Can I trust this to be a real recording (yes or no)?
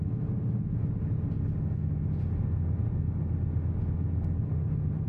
yes